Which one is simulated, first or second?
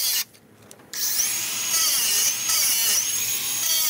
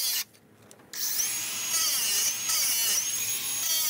first